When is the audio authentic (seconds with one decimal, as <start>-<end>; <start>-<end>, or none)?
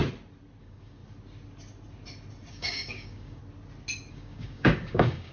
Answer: 0.0-0.6; 1.0-2.5; 3.4-4.1